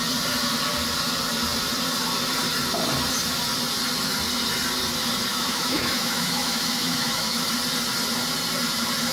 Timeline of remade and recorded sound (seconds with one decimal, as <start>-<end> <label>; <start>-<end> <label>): 0.0-5.3 recorded; 5.3-7.5 remade; 7.5-9.1 recorded